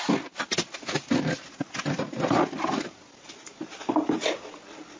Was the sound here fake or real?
real